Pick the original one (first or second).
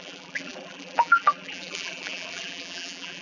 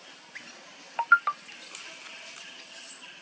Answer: second